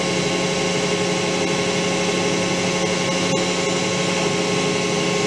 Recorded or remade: recorded